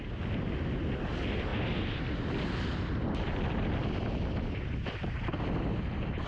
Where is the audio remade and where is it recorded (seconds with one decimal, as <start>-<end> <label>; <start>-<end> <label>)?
0.0-6.3 recorded

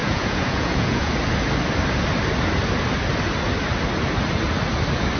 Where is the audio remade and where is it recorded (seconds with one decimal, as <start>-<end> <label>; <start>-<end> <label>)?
0.0-1.1 remade; 1.1-5.2 recorded